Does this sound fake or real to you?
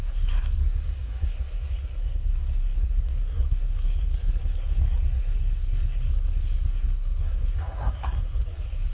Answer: fake